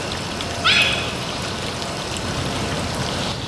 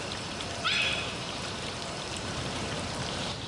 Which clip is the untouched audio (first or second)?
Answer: first